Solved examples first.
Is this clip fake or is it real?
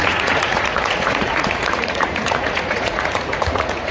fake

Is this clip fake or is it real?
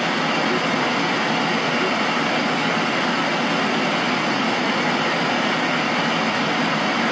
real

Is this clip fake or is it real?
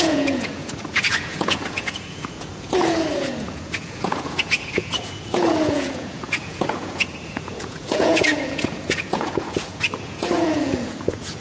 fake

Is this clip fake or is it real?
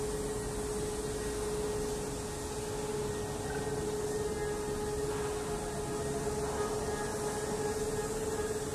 real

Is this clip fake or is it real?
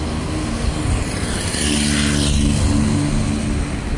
real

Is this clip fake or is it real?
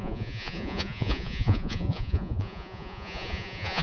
fake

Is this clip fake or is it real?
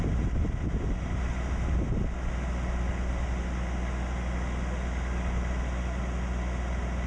real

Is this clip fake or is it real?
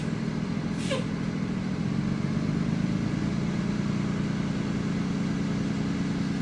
real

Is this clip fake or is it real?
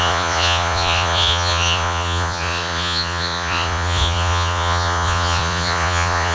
fake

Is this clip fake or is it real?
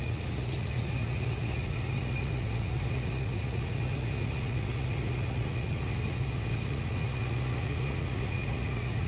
fake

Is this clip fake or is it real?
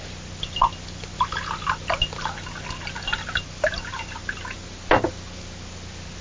real